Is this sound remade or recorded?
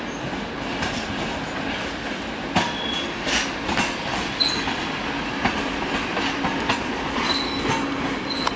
recorded